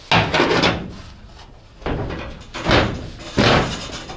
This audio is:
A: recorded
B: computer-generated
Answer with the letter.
A